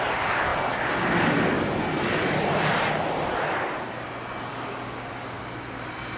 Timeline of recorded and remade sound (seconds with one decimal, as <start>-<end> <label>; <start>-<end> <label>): 0.0-4.5 recorded; 4.5-5.4 remade; 5.4-6.2 recorded